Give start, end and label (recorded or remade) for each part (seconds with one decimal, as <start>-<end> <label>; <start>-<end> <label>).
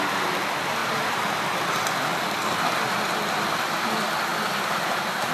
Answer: 0.0-0.8 recorded; 0.8-1.4 remade; 1.4-4.3 recorded; 4.3-5.3 remade